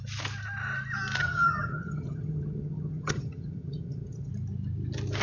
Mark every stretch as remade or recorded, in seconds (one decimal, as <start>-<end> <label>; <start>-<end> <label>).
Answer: 0.0-1.2 recorded; 1.2-4.3 remade; 4.3-5.2 recorded